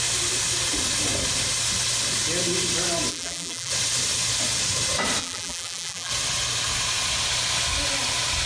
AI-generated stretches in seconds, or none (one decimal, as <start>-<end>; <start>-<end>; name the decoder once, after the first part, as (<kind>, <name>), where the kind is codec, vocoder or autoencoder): 3.1-3.7 (vocoder, BigVGAN v2); 5.2-6.1